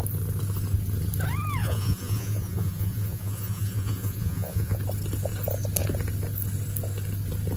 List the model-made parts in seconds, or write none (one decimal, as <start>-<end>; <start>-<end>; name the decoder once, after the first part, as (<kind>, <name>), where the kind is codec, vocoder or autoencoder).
1.6-4.8 (vocoder, Vocos)